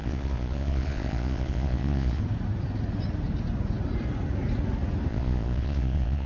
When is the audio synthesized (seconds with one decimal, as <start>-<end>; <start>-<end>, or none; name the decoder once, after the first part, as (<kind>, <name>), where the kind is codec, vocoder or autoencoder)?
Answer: 0.0-2.2 (vocoder, Vocos); 5.1-6.3